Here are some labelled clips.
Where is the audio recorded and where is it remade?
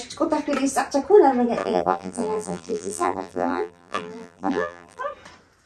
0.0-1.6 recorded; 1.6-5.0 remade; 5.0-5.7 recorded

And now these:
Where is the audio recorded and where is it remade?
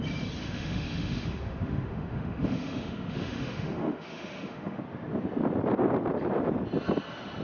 0.0-0.4 recorded; 0.4-4.8 remade; 4.8-7.4 recorded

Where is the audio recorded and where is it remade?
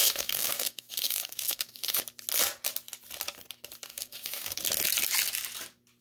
0.0-2.0 remade; 2.0-3.9 recorded; 3.9-4.6 remade; 4.6-6.0 recorded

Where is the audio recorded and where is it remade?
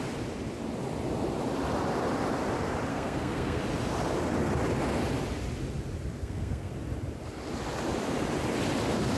0.0-2.9 recorded; 2.9-3.6 remade; 3.6-6.2 recorded; 6.2-6.7 remade; 6.7-9.2 recorded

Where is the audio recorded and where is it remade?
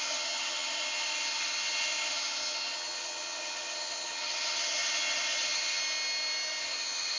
0.0-5.8 remade; 5.8-6.6 recorded; 6.6-7.2 remade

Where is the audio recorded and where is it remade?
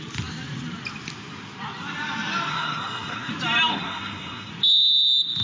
0.0-2.5 recorded; 2.5-3.3 remade; 3.3-3.7 recorded; 3.7-4.5 remade; 4.5-5.4 recorded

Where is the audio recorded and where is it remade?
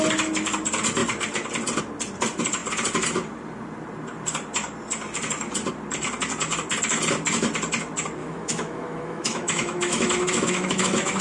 0.0-8.2 recorded; 8.2-11.2 remade